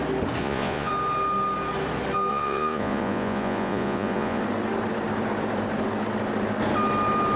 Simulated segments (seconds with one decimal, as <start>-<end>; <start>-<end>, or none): 0.4-0.9; 2.3-4.4